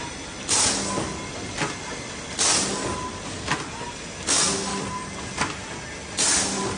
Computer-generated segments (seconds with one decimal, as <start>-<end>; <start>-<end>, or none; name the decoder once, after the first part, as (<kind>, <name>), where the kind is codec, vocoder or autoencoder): none